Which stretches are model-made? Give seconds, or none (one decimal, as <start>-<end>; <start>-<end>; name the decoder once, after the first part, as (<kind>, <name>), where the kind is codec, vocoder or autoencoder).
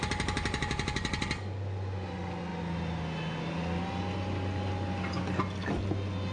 none